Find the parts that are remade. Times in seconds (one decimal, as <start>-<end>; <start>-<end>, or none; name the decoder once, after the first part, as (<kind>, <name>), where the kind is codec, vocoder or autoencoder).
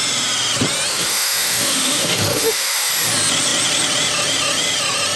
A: 0.9-2.9 (autoencoder, DAC-VAE)